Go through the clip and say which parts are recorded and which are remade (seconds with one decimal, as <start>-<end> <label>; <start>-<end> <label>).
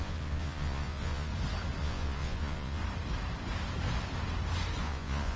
0.0-1.3 remade; 1.3-1.8 recorded; 1.8-2.8 remade; 2.8-4.8 recorded; 4.8-5.4 remade